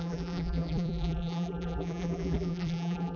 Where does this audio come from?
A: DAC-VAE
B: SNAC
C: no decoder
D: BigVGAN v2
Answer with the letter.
D